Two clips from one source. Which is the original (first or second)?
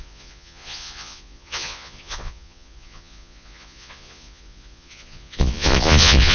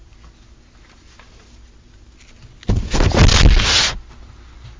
second